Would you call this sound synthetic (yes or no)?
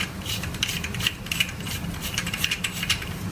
yes